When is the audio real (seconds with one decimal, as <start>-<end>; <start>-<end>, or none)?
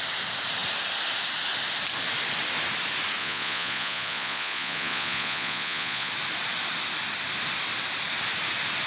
0.0-3.2; 6.1-8.9